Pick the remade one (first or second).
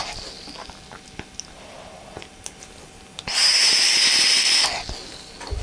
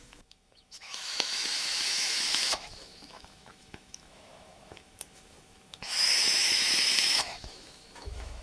second